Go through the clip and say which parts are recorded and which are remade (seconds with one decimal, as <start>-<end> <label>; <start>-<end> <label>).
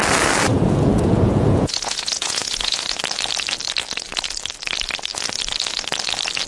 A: 0.0-0.5 recorded; 0.5-3.0 remade; 3.0-6.5 recorded